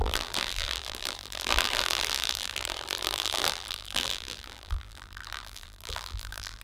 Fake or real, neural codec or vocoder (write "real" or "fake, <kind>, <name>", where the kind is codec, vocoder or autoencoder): fake, vocoder, BigVGAN v2